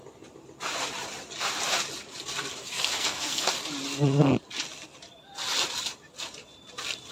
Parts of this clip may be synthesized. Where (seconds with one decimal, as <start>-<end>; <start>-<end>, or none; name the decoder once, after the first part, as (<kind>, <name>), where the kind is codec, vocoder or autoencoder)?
2.6-3.5 (codec, SNAC)